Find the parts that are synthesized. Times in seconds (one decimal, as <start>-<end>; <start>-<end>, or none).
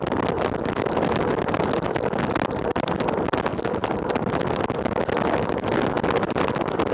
none